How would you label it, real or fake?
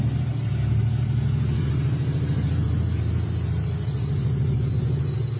fake